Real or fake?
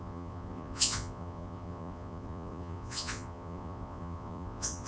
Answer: fake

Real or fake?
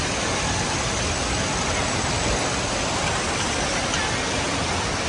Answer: fake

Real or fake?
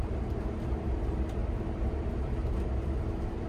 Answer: fake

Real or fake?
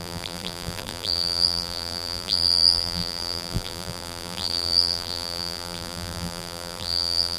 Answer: fake